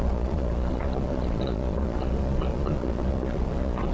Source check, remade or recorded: remade